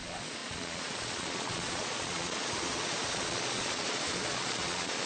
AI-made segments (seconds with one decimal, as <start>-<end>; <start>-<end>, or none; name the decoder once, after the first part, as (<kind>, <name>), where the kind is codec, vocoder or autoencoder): 0.0-5.1 (vocoder, Vocos)